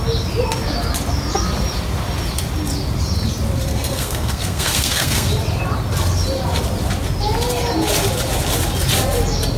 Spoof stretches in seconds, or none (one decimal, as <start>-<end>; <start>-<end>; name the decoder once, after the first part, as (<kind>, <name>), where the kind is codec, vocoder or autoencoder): 3.7-5.3 (codec, SNAC)